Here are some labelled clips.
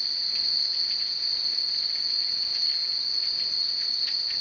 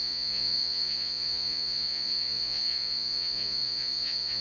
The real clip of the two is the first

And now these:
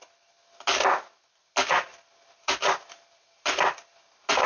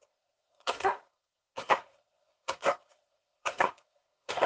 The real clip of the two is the first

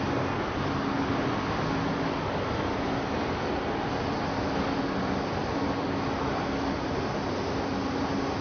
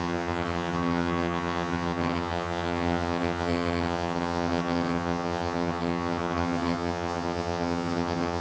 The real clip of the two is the first